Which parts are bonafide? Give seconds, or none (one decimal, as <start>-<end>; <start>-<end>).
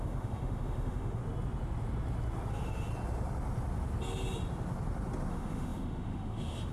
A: 1.2-2.5; 2.9-5.3